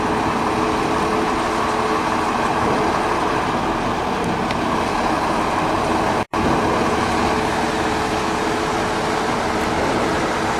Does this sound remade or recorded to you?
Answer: recorded